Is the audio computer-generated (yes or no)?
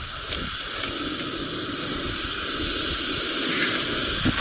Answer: no